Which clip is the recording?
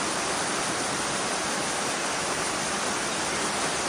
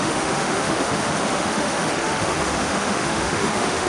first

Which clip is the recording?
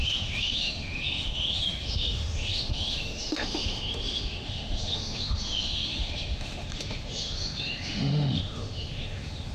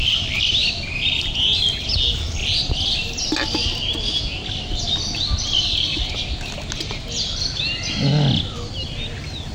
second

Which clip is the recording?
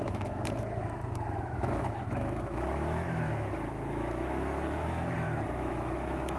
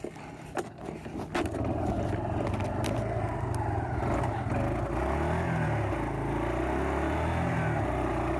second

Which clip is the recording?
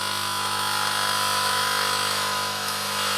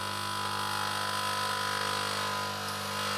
second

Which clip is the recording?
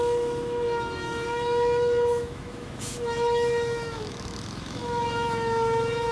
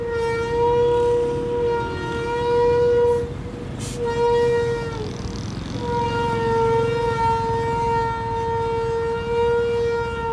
second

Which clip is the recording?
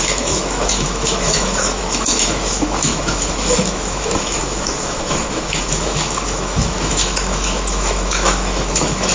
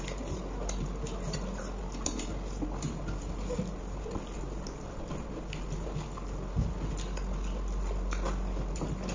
second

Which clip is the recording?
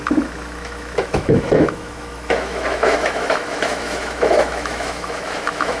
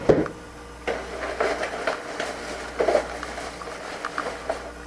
second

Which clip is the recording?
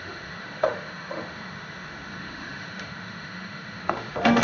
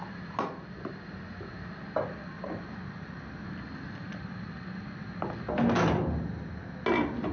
second